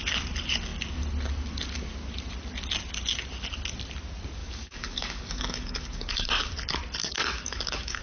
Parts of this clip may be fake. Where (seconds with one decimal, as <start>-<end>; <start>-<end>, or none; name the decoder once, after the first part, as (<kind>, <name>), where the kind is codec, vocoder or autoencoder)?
4.4-6.5 (codec, DAC); 7.0-8.0